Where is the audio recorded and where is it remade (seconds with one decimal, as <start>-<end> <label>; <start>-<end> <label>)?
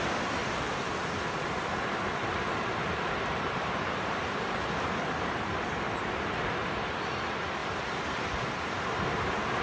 0.0-0.4 remade; 0.4-3.2 recorded; 3.2-9.6 remade